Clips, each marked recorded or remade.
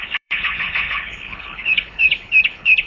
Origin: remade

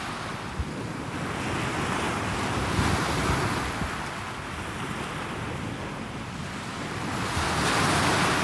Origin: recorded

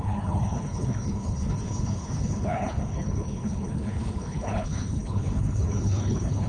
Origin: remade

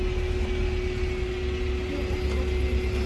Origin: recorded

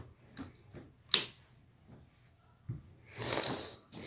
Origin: recorded